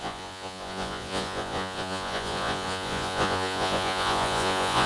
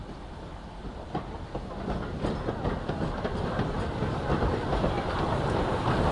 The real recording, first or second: second